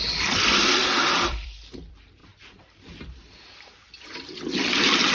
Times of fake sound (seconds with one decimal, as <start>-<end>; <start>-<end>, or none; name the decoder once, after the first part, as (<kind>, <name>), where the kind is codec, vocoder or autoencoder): 0.0-2.2 (vocoder, BigVGAN v2)